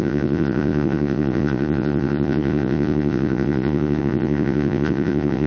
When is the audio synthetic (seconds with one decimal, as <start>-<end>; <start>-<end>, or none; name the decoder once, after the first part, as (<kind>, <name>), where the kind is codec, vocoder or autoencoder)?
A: 0.0-5.5 (vocoder, Vocos)